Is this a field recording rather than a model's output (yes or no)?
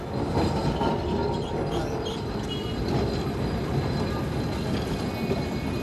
yes